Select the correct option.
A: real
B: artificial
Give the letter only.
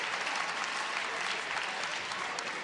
B